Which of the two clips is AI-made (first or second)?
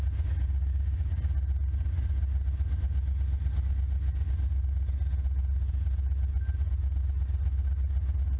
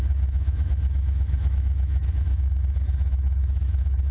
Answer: second